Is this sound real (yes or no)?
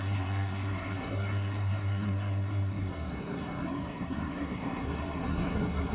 no